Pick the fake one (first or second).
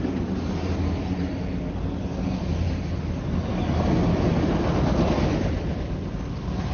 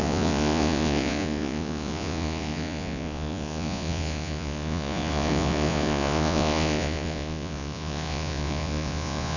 second